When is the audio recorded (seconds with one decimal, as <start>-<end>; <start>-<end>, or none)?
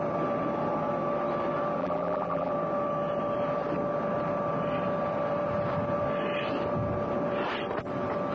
0.0-1.8; 2.5-8.3